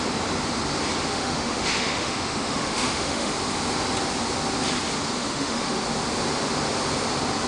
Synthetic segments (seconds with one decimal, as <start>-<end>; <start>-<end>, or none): 1.1-3.3; 5.2-5.7